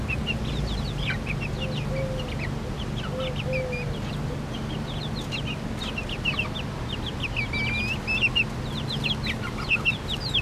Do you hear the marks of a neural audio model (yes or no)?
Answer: no